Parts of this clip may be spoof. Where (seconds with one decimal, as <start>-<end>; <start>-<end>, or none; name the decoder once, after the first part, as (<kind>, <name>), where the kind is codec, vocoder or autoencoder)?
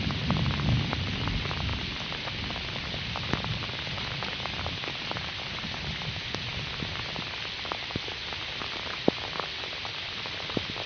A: none